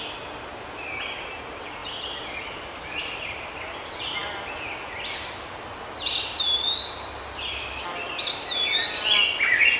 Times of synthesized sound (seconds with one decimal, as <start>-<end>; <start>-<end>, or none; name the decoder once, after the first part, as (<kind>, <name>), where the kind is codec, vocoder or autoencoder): none